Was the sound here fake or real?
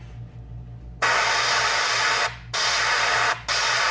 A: real